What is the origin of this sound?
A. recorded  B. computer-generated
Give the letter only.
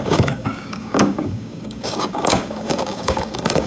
B